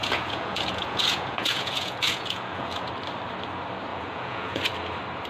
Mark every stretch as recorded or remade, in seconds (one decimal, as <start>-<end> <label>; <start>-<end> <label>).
0.0-2.9 remade; 2.9-3.9 recorded; 3.9-4.7 remade; 4.7-5.3 recorded